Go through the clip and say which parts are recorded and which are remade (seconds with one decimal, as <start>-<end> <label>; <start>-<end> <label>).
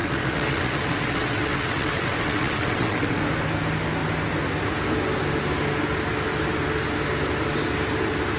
0.0-3.2 remade; 3.2-8.4 recorded